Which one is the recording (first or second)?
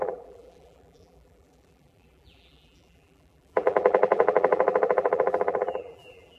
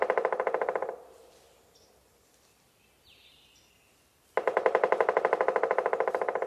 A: second